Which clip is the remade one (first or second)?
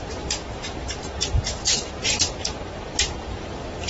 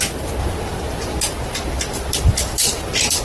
first